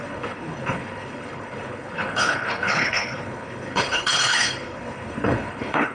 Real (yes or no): no